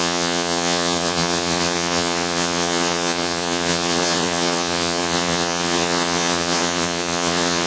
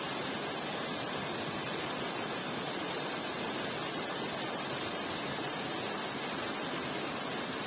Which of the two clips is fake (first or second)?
first